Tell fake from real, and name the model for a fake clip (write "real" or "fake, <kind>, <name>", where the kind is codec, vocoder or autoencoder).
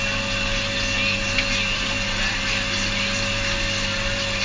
real